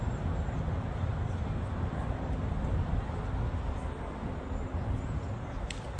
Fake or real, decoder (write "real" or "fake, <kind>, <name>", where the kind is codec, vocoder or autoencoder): real